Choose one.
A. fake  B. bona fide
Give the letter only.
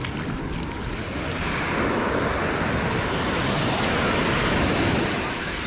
B